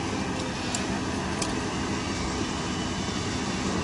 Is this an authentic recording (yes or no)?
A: yes